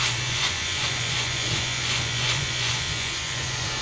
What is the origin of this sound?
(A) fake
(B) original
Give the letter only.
A